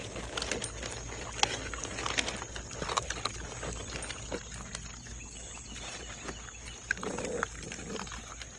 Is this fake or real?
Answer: real